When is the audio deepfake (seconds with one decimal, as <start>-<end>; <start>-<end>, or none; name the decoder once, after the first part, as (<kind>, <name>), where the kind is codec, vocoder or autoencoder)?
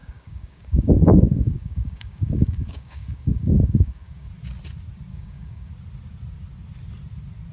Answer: 0.0-4.3 (codec, DAC); 5.1-5.7